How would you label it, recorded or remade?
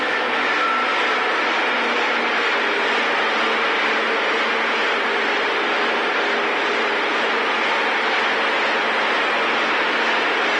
recorded